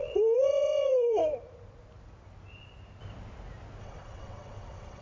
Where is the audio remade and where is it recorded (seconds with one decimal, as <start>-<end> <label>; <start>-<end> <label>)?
0.0-1.2 remade; 1.2-3.8 recorded; 3.8-5.0 remade